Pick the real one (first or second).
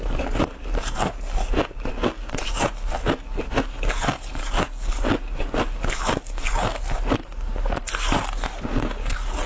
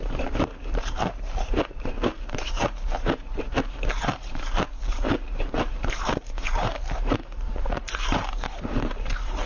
first